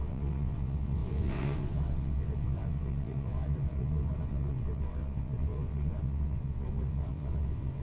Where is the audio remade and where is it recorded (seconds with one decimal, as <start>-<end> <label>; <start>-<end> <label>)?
0.0-7.8 remade

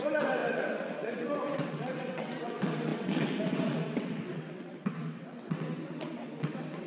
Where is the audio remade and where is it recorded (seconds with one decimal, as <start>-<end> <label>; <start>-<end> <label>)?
0.0-6.9 remade

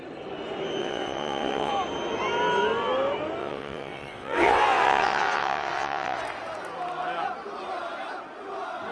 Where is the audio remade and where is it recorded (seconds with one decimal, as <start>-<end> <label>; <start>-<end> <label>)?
0.0-0.8 recorded; 0.8-1.7 remade; 1.7-3.4 recorded; 3.4-6.2 remade; 6.2-8.9 recorded

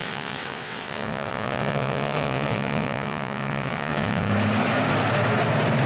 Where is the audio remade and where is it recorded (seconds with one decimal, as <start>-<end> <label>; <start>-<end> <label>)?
0.0-4.3 remade; 4.3-5.9 recorded

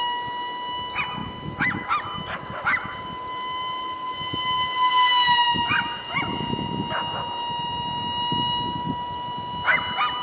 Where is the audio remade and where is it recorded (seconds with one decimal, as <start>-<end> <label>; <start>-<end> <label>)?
0.0-10.2 recorded

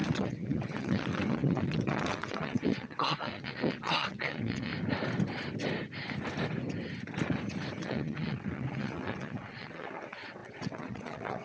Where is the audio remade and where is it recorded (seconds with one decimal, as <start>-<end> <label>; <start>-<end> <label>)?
0.0-4.7 remade; 4.7-7.8 recorded; 7.8-11.4 remade

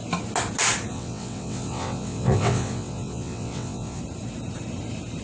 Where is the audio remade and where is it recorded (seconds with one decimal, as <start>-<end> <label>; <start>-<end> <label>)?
0.0-0.9 recorded; 0.9-4.0 remade; 4.0-5.2 recorded